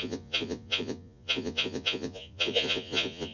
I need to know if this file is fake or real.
fake